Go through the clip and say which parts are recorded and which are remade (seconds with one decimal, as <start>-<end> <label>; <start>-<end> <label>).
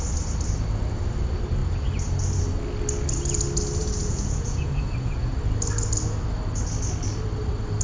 0.0-3.8 recorded; 3.8-5.3 remade; 5.3-7.8 recorded